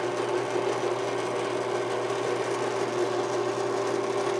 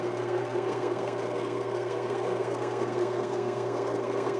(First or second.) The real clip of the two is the first